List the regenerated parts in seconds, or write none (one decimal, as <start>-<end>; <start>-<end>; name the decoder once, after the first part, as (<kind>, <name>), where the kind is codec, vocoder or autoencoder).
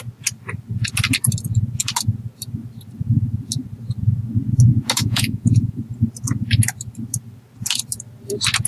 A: 5.0-5.8 (vocoder, Vocos)